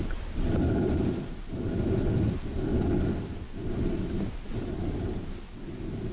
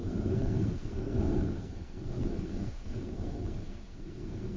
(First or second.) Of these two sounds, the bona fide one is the first